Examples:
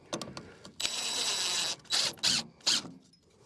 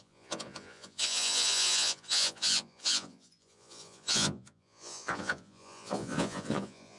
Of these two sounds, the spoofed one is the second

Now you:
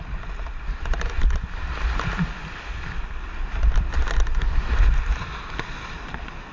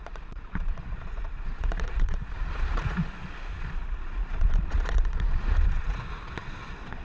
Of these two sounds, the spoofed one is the second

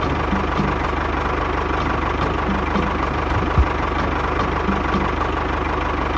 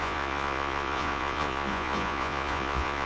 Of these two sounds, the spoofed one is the second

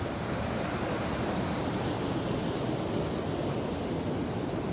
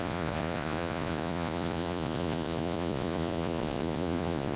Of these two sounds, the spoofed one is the second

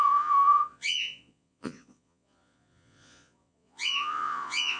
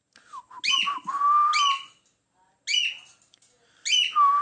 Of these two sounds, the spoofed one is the first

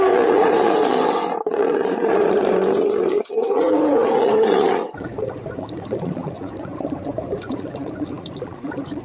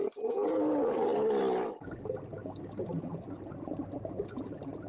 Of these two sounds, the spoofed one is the first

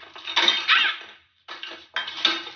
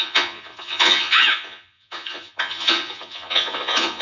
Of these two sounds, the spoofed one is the second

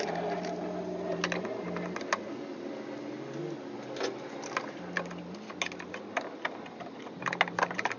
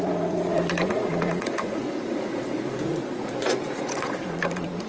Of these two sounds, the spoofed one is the second